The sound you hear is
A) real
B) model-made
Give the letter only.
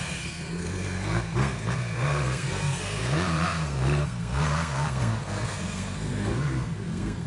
B